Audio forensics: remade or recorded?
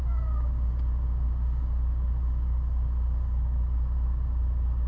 recorded